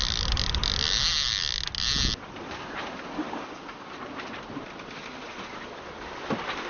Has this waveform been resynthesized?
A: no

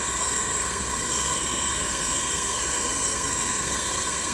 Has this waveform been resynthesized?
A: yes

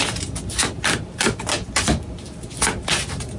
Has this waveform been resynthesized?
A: no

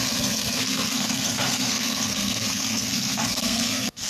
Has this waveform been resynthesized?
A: yes